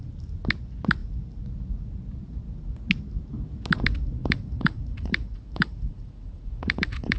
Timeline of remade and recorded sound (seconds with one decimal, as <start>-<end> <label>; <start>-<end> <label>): 0.0-4.2 recorded; 4.2-7.2 remade